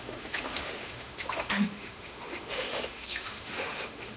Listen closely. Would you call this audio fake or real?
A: fake